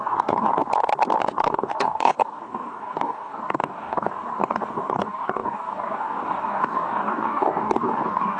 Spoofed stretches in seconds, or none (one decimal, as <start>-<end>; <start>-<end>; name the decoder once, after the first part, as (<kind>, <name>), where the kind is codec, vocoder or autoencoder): 0.0-0.5 (codec, DAC); 1.2-8.4